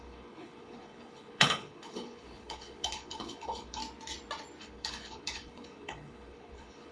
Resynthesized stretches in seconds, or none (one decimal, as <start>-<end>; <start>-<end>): 0.0-3.8; 4.6-6.9